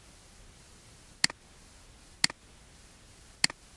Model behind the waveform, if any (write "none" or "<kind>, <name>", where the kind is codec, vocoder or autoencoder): none